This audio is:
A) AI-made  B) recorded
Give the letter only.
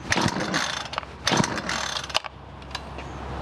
B